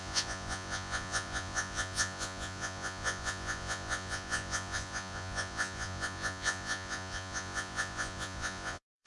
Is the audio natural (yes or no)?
no